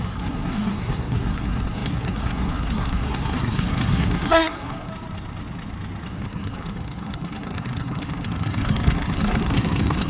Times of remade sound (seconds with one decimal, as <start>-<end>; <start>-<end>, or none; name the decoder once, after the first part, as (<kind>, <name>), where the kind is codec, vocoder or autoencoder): 0.0-4.9 (codec, SNAC); 6.1-10.1